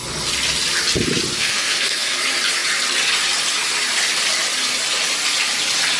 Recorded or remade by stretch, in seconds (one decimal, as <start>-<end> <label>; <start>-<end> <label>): 0.0-1.3 recorded; 1.3-2.2 remade; 2.2-6.0 recorded